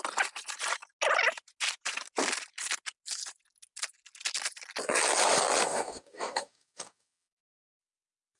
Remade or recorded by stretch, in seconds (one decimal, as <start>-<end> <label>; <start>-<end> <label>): 0.0-5.6 recorded; 5.6-7.8 remade; 7.8-8.4 recorded